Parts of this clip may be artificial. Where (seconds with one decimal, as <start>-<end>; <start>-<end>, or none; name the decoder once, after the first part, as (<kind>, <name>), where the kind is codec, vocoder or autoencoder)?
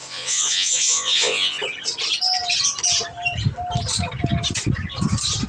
0.0-1.6 (vocoder, Vocos)